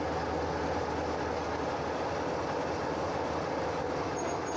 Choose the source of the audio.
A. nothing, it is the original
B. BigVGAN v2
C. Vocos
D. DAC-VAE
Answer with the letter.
A